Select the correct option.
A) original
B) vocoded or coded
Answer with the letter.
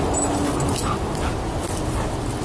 A